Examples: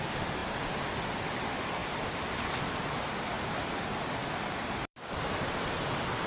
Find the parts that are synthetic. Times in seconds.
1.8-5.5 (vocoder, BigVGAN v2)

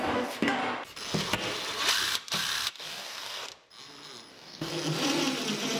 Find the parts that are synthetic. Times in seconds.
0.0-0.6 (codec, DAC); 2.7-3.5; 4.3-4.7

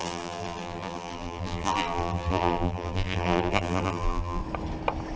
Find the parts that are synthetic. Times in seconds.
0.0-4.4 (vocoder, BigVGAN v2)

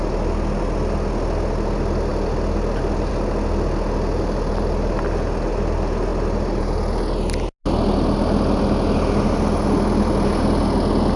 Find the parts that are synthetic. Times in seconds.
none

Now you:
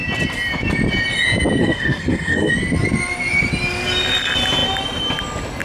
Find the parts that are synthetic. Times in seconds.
1.6-2.5 (codec, SNAC)

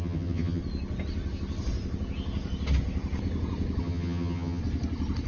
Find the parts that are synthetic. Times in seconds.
0.0-0.6 (vocoder, HiFi-GAN); 3.8-4.6

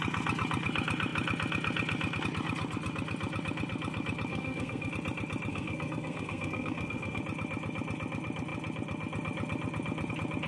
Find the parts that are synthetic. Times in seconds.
4.3-4.9 (codec, SNAC); 5.5-7.2

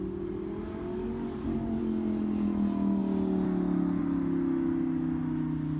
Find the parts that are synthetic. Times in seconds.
1.0-1.8 (codec, DAC)